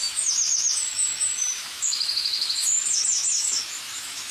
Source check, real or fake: fake